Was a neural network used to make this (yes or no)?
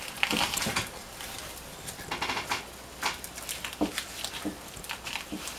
yes